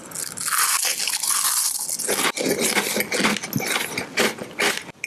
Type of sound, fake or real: real